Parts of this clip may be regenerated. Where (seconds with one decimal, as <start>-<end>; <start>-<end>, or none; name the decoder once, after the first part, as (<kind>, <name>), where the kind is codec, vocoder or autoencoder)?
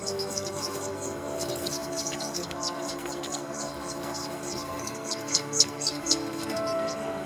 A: 0.0-7.3 (codec, SNAC)